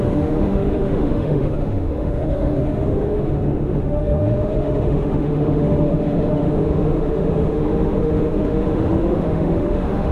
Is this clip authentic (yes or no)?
no